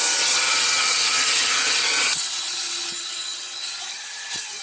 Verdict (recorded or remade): remade